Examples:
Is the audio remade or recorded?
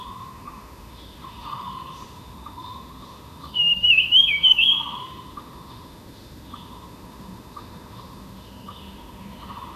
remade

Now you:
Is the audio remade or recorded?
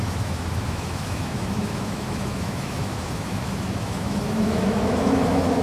remade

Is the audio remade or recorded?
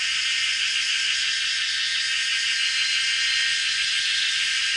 recorded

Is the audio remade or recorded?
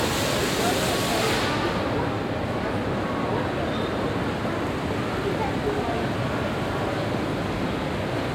recorded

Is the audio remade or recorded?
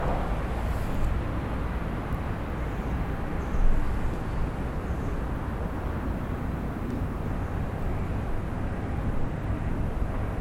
recorded